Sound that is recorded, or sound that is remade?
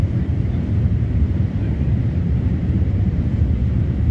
remade